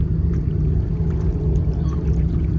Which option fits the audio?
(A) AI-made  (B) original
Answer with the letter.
A